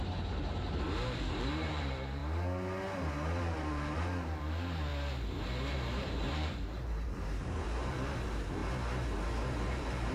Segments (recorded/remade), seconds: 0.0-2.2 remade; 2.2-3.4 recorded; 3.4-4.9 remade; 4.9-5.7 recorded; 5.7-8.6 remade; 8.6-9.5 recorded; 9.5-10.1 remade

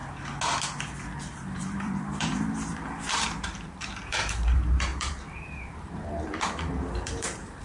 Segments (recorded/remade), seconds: 0.0-1.2 recorded; 1.2-7.6 remade

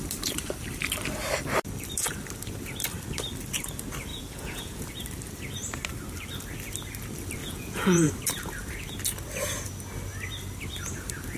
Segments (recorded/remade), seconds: 0.0-4.1 recorded; 4.1-4.9 remade; 4.9-7.4 recorded; 7.4-8.1 remade; 8.1-11.4 recorded

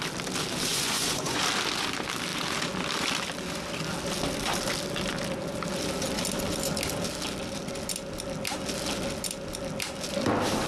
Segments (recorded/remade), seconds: 0.0-0.7 recorded; 0.7-1.4 remade; 1.4-10.7 recorded

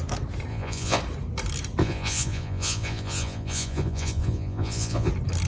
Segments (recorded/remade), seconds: 0.0-0.5 recorded; 0.5-1.0 remade; 1.0-1.8 recorded; 1.8-5.1 remade; 5.1-5.5 recorded

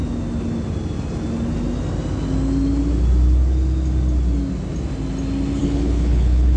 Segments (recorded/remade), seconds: 0.0-5.6 recorded; 5.6-6.6 remade